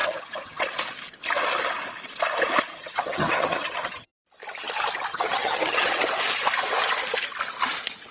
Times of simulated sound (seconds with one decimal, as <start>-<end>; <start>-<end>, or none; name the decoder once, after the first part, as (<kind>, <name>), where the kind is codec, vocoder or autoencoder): 0.0-0.6 (vocoder, HiFi-GAN); 2.7-4.1; 5.1-5.9